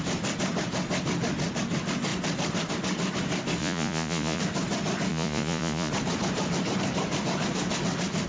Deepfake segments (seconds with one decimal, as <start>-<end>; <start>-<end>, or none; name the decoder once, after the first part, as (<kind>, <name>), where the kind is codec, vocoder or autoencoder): 3.6-4.4 (vocoder, Vocos); 5.1-5.9